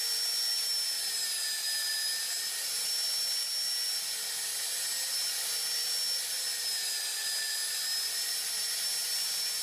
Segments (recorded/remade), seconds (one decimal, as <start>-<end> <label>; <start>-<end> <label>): 0.0-9.6 recorded